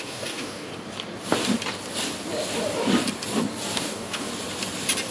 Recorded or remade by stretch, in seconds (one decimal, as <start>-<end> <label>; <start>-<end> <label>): 0.0-0.7 remade; 0.7-3.8 recorded; 3.8-4.3 remade; 4.3-5.1 recorded

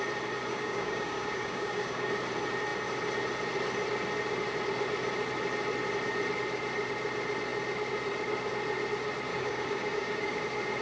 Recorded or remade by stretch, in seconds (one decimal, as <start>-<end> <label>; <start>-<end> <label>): 0.0-0.5 recorded; 0.5-2.1 remade; 2.1-9.3 recorded; 9.3-10.4 remade; 10.4-10.8 recorded

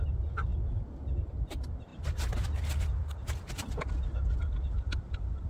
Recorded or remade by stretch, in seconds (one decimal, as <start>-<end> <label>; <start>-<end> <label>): 0.0-5.5 recorded

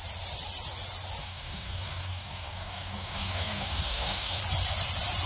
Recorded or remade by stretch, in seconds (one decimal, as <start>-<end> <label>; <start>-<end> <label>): 0.0-1.2 recorded; 1.2-4.4 remade; 4.4-5.3 recorded

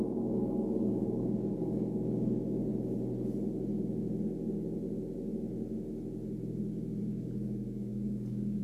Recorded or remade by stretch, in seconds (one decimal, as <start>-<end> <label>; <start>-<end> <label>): 0.0-2.7 remade; 2.7-7.0 recorded; 7.0-8.6 remade

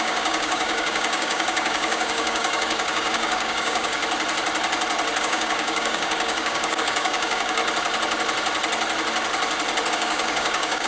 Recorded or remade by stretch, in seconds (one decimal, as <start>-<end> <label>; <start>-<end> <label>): 0.0-4.0 remade; 4.0-5.2 recorded; 5.2-7.6 remade; 7.6-9.9 recorded; 9.9-10.9 remade